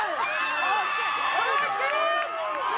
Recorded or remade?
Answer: recorded